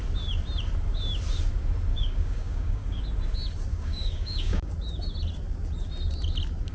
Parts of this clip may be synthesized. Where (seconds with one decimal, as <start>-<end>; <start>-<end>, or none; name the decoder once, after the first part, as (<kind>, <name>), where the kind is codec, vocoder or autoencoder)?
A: 1.9-3.0 (codec, DAC); 3.7-4.7